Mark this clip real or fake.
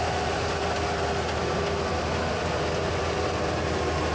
real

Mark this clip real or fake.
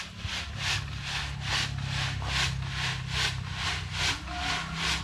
real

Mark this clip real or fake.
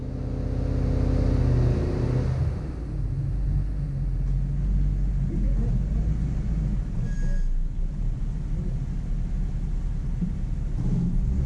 real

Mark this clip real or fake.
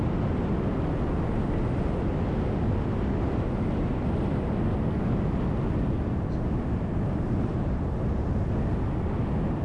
real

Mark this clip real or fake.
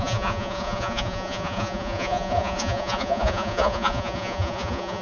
fake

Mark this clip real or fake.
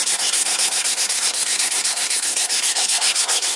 fake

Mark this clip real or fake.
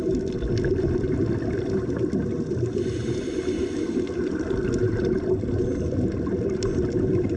real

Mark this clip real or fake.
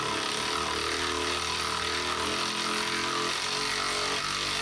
real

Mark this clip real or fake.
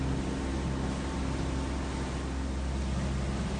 real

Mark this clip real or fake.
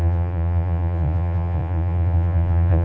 fake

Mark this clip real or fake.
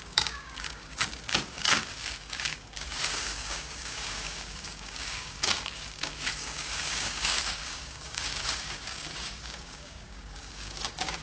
fake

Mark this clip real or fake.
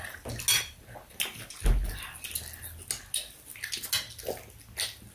real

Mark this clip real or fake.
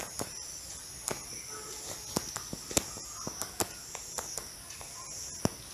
real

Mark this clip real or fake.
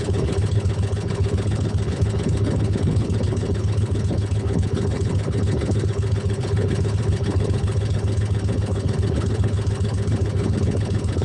fake